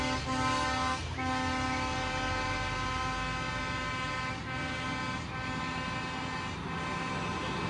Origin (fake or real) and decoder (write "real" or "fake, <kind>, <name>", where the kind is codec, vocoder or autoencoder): real